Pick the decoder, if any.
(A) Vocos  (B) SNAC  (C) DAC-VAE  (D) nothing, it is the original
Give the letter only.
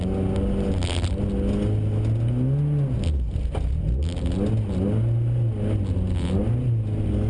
D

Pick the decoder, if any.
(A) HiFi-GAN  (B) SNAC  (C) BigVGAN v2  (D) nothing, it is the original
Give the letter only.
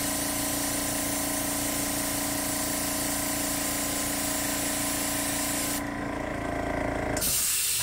D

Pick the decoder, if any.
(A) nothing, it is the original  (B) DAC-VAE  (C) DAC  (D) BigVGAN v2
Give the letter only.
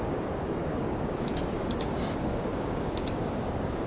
C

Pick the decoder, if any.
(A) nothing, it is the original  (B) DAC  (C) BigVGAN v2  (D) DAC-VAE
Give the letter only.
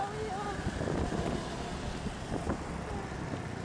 A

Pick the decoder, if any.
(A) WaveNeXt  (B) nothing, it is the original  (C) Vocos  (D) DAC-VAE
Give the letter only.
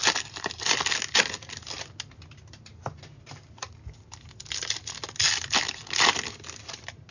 B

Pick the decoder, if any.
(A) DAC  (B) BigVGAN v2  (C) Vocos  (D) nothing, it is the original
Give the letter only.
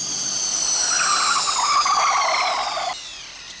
D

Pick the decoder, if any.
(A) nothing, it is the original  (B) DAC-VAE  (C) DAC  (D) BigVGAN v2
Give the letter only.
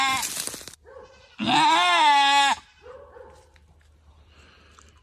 A